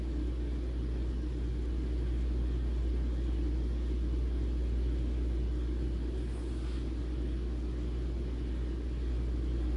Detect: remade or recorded recorded